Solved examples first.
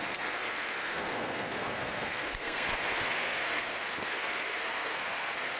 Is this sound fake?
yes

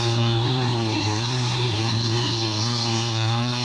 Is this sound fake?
yes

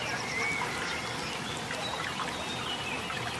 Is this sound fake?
no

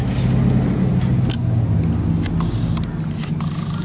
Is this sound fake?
no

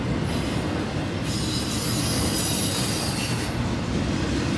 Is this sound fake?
no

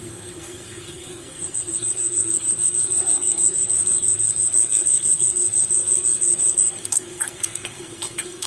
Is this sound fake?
yes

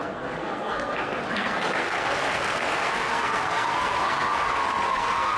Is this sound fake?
yes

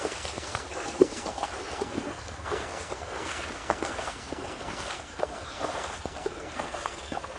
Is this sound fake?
yes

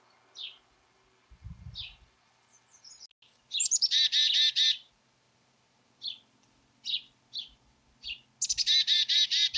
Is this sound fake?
no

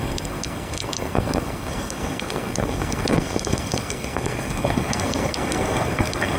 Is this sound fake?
yes